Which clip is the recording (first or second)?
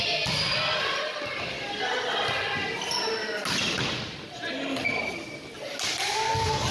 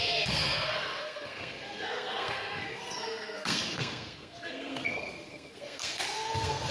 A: first